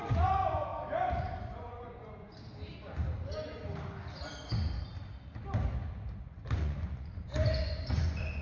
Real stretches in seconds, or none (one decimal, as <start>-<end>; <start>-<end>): 0.7-1.3; 2.3-6.2